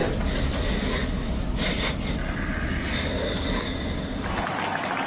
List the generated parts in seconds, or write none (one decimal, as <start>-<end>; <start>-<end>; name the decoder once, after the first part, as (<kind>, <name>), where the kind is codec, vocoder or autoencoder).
none